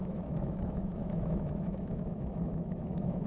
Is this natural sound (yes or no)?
no